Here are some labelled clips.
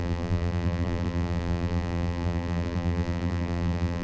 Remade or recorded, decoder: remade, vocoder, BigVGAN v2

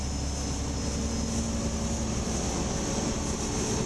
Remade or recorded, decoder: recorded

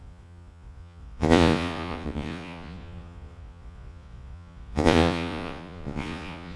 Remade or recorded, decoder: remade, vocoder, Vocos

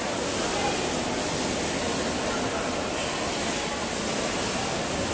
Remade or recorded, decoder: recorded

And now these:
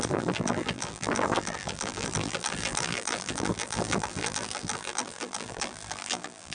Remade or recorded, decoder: remade, vocoder, BigVGAN v2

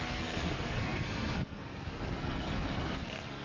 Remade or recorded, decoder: remade, codec, SNAC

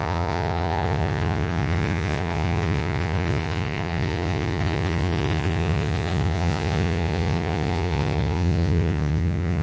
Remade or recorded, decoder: remade, vocoder, Vocos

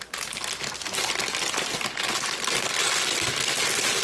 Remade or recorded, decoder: recorded